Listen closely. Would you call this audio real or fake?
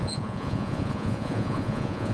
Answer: fake